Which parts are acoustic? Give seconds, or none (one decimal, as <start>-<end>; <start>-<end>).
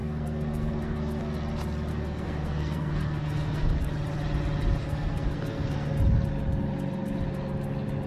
1.2-1.9; 3.9-4.8; 5.9-8.1